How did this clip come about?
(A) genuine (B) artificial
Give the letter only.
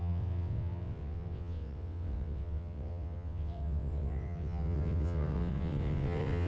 B